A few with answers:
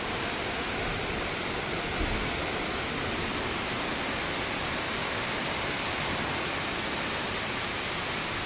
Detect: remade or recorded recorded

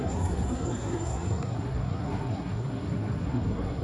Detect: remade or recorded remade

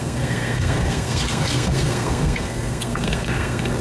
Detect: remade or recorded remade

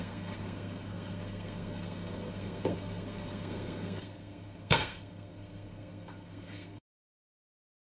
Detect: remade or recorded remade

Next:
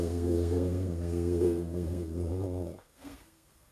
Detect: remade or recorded remade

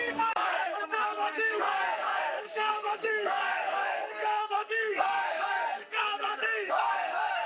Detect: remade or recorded remade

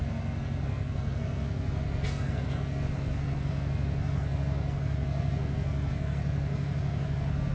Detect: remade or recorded remade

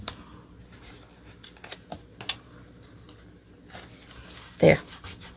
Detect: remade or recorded recorded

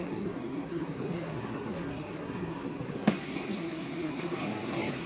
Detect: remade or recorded remade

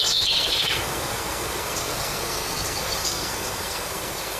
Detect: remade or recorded remade